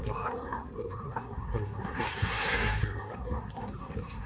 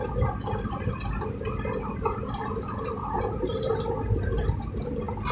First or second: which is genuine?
second